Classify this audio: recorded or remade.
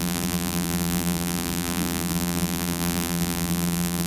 remade